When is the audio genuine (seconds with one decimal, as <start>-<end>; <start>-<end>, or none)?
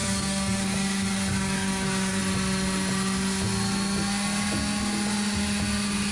2.2-6.1